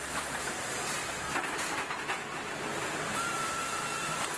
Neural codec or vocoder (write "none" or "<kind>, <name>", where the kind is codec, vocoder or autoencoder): none